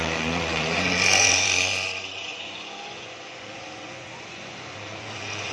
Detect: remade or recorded remade